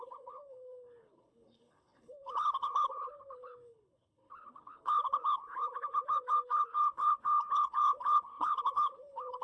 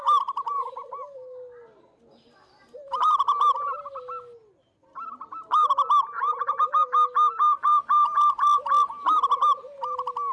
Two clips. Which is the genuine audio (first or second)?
second